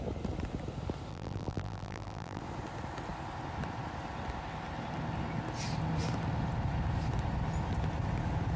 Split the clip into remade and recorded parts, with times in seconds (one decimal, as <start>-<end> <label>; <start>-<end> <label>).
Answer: 0.0-1.1 recorded; 1.1-2.4 remade; 2.4-8.6 recorded

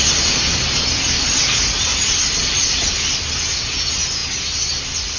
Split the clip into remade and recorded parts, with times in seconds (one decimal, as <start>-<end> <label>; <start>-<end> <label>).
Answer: 0.0-1.9 recorded; 1.9-2.8 remade; 2.8-5.2 recorded

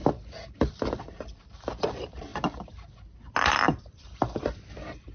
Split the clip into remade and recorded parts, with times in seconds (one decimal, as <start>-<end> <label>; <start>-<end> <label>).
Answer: 0.0-0.7 recorded; 0.7-2.3 remade; 2.3-3.7 recorded; 3.7-5.1 remade